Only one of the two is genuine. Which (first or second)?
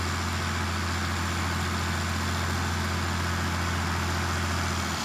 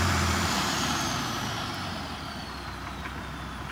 first